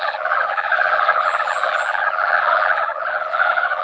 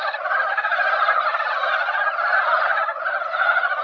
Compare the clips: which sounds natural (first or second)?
second